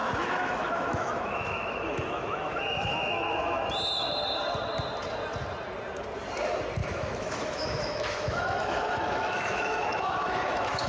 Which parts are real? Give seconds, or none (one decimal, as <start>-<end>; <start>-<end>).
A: 3.7-6.8